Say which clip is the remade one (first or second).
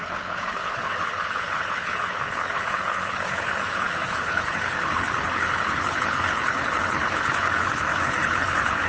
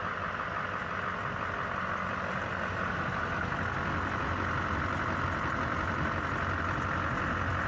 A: first